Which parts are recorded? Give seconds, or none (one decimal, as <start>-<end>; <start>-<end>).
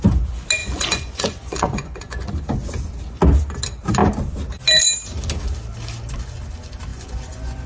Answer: 0.0-0.6; 2.3-6.9